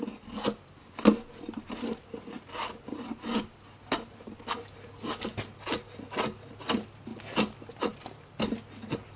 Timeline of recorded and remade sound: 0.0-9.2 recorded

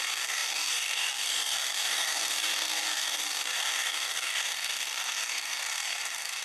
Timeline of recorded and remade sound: 0.0-6.4 remade

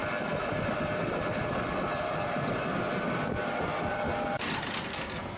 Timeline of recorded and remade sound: 0.0-4.9 recorded; 4.9-5.4 remade

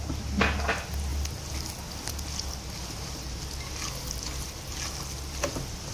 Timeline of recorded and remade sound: 0.0-5.9 recorded